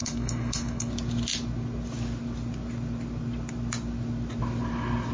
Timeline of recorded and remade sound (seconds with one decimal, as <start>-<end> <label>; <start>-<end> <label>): 0.0-0.9 remade; 0.9-5.1 recorded